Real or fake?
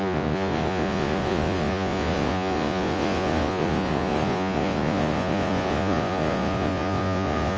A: fake